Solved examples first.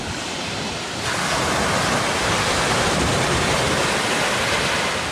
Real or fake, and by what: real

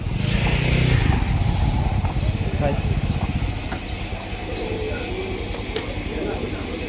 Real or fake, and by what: real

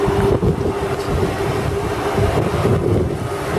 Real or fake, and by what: real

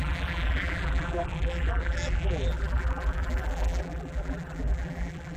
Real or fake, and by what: fake, vocoder, BigVGAN v2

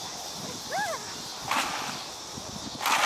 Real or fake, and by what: real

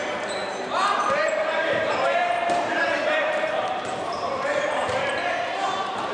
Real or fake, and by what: fake, vocoder, BigVGAN v2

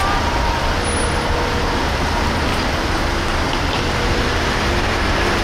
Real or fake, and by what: real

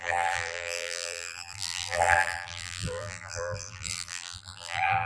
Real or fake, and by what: fake, vocoder, BigVGAN v2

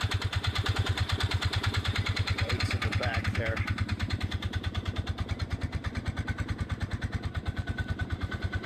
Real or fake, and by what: fake, vocoder, BigVGAN v2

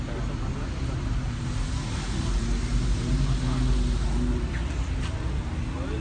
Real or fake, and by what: real